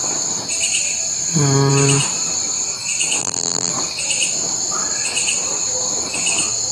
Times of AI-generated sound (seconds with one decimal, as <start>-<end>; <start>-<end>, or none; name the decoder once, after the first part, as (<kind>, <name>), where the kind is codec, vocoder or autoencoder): 3.2-3.7 (vocoder, BigVGAN v2)